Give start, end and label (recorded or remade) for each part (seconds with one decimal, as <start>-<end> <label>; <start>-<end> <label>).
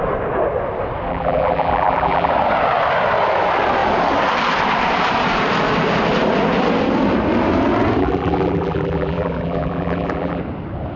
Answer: 0.0-1.1 recorded; 1.1-2.3 remade; 2.3-8.0 recorded; 8.0-10.4 remade; 10.4-11.0 recorded